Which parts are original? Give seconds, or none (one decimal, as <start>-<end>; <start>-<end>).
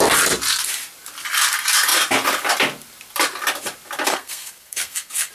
0.0-4.1